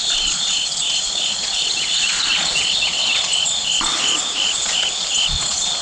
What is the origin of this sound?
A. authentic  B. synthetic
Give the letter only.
B